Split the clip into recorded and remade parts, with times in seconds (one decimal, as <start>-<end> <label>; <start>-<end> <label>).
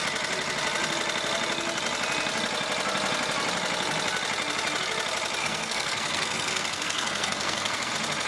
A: 0.0-5.4 recorded; 5.4-7.9 remade; 7.9-8.3 recorded